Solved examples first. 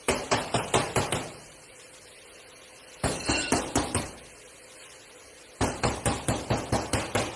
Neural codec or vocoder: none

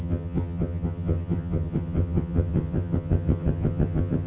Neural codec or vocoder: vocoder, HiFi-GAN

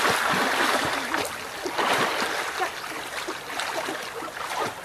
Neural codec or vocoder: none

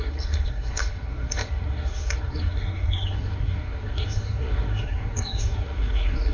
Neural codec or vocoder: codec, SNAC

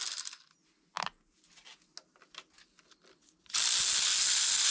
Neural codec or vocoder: none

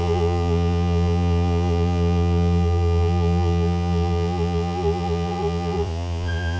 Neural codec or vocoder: vocoder, Vocos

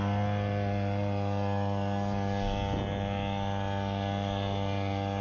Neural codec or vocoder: none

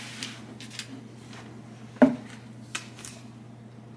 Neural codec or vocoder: none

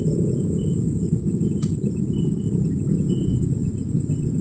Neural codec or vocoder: vocoder, Vocos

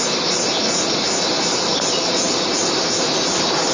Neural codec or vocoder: none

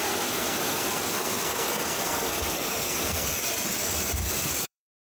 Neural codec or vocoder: codec, SNAC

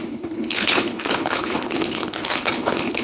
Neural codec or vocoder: codec, HILCodec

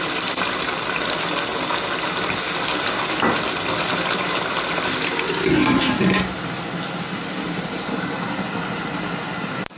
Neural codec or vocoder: none